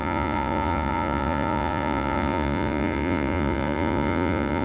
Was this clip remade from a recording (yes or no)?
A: yes